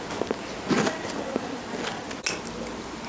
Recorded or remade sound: recorded